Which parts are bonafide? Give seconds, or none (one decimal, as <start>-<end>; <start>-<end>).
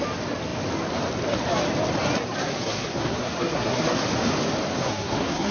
0.0-2.4; 4.0-4.8